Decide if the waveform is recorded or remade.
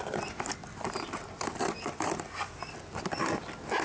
recorded